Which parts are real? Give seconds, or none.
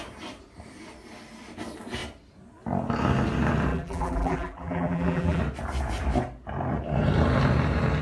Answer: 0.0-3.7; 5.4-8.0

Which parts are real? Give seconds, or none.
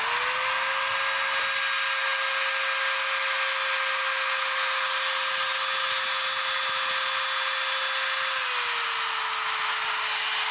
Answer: 0.0-10.5